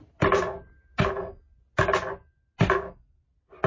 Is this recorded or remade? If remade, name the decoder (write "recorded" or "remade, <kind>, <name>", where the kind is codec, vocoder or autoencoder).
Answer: recorded